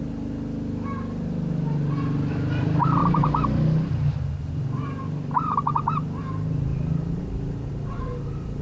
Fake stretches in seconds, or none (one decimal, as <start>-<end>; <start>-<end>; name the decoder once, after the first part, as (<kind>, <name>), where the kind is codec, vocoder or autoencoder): 3.0-6.2 (vocoder, BigVGAN v2); 6.7-8.6